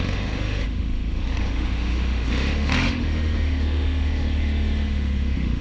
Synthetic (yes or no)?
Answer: yes